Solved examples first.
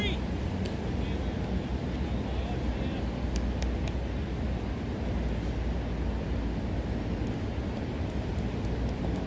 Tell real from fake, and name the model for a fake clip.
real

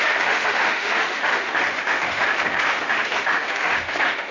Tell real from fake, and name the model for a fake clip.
fake, autoencoder, DAC-VAE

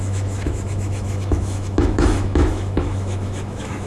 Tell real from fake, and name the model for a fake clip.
fake, autoencoder, DAC-VAE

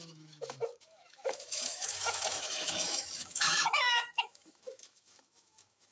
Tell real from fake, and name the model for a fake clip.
fake, autoencoder, DAC-VAE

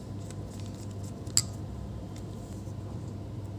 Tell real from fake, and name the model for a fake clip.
real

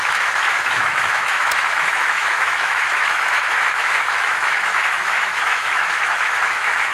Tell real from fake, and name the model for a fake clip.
fake, autoencoder, DAC-VAE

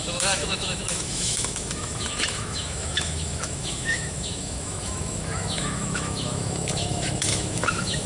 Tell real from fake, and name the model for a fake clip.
fake, autoencoder, DAC-VAE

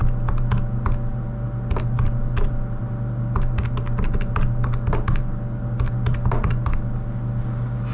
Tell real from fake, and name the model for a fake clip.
real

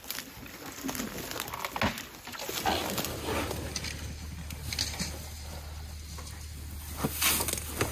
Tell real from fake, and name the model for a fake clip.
real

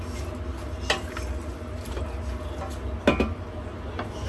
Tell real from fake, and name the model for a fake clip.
real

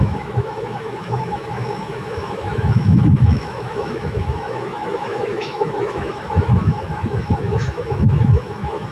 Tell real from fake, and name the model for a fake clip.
fake, autoencoder, DAC-VAE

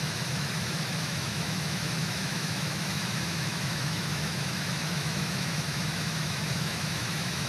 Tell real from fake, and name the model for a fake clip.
fake, autoencoder, DAC-VAE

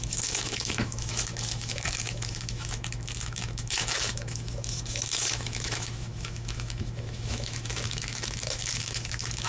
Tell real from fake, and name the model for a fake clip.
fake, autoencoder, DAC-VAE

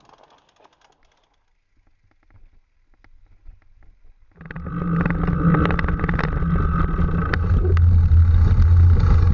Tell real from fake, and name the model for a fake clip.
real